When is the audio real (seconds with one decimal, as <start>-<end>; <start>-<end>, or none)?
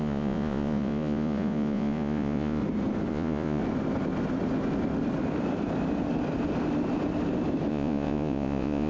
2.6-3.1; 3.6-7.7